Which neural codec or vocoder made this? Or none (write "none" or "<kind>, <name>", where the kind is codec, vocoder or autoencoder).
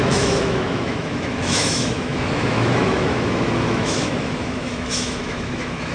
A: autoencoder, DAC-VAE